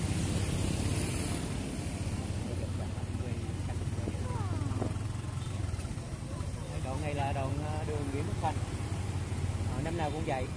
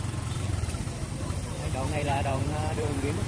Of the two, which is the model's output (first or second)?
second